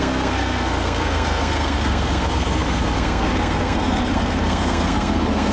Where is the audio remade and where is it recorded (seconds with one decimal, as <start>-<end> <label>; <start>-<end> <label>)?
0.0-5.5 remade